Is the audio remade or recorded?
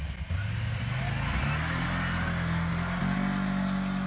recorded